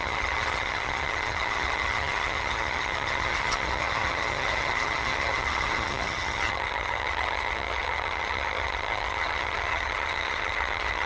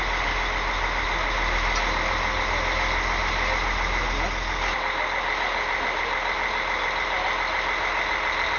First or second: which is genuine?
second